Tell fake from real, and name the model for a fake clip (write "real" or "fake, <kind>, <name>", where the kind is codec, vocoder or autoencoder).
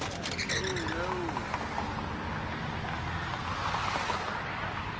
real